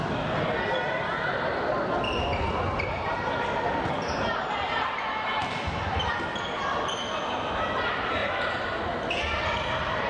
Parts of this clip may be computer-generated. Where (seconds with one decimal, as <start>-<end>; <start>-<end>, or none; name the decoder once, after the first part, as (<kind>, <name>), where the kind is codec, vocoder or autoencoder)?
none